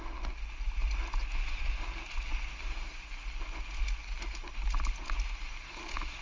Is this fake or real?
real